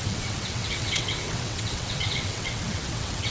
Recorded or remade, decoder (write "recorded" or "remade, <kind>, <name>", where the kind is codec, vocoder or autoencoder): remade, vocoder, WaveNeXt